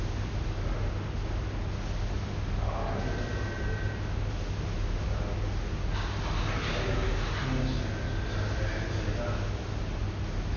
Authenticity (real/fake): real